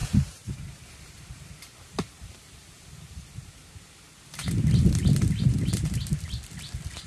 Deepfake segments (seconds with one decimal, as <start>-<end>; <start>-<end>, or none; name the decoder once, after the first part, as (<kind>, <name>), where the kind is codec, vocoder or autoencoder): 0.0-3.5 (vocoder, BigVGAN v2)